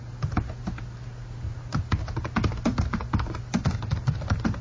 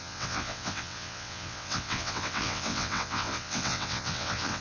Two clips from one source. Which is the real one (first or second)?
first